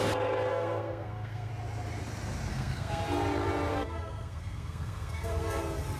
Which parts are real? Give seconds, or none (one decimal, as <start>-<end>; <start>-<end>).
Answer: 0.0-0.5; 1.5-2.5; 3.0-3.7; 5.6-6.0